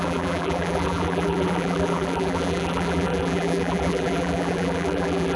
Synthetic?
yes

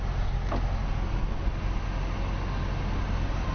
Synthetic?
no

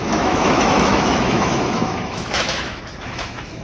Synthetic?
yes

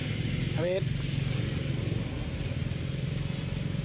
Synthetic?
no